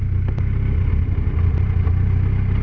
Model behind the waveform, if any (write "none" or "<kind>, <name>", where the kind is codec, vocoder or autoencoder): none